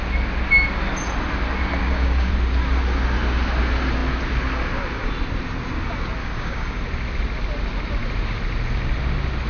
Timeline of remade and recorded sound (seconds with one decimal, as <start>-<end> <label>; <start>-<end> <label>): 0.0-1.8 recorded; 1.8-2.3 remade; 2.3-6.2 recorded; 6.2-6.8 remade; 6.8-9.5 recorded